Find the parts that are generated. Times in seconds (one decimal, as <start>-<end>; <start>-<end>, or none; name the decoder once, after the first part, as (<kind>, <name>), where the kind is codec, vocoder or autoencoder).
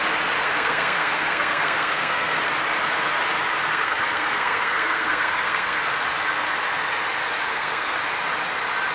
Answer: 0.4-2.4 (codec, SNAC); 3.7-5.8; 7.5-8.0